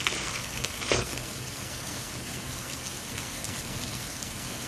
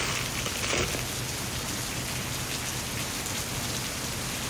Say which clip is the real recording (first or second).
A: second